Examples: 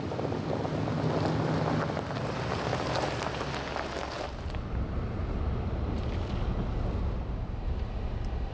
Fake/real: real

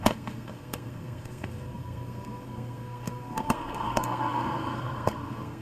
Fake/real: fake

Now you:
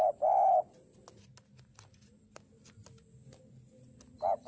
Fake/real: real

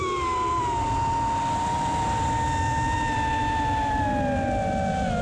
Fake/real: real